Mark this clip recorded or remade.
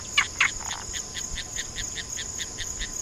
recorded